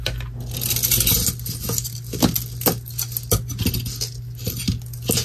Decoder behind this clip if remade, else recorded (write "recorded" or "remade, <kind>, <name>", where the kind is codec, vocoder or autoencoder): recorded